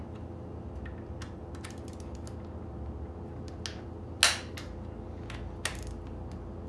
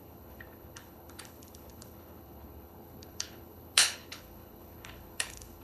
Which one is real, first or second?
first